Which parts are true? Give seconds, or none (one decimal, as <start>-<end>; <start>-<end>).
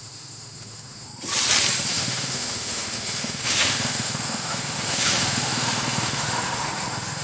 1.1-1.9